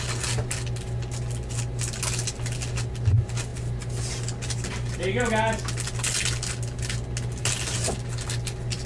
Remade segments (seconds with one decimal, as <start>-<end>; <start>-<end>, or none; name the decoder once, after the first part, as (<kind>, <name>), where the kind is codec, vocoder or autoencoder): none